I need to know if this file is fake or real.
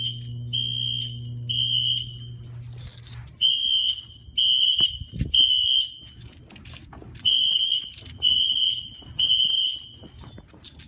real